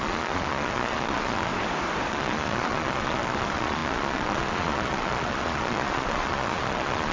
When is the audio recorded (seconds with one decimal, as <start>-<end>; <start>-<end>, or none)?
1.5-2.1

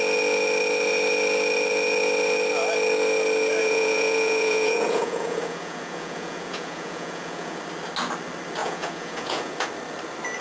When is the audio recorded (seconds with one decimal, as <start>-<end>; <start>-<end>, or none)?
0.0-3.6; 7.6-8.6; 9.7-10.4

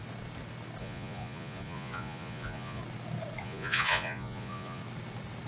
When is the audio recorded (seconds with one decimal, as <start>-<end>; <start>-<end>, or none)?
0.0-0.8; 2.8-3.4; 4.8-5.5

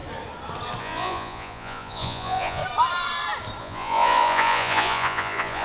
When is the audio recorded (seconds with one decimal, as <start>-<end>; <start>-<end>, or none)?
0.0-0.8; 2.6-3.6

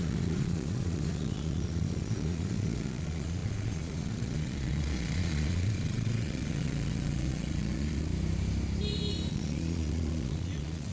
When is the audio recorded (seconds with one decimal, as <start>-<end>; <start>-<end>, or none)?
8.1-9.3

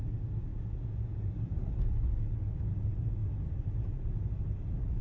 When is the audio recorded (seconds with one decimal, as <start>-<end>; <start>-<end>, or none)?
0.0-0.5; 1.3-5.0